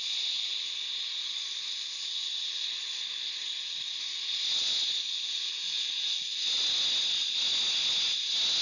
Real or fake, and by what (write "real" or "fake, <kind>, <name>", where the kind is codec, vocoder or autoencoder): real